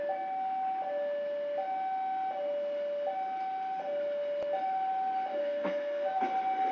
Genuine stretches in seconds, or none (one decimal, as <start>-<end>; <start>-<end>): 0.0-5.4; 6.2-6.7